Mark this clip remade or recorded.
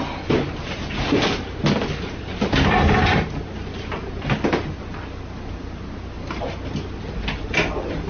recorded